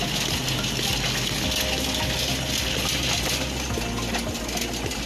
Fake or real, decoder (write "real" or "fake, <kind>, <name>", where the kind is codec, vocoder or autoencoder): real